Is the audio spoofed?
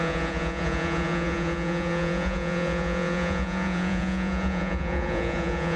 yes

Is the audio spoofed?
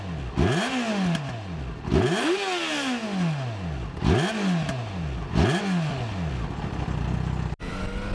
no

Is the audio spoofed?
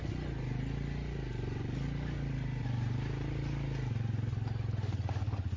no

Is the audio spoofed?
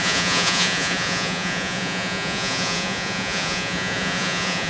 yes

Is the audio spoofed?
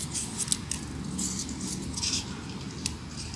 no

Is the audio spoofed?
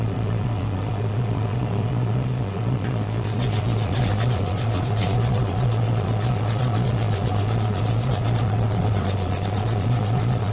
yes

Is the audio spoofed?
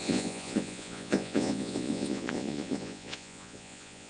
yes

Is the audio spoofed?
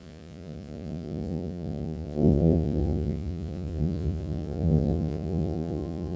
yes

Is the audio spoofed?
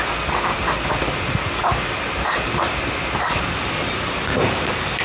no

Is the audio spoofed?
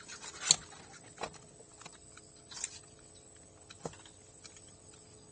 no